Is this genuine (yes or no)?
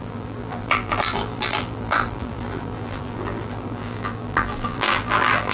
no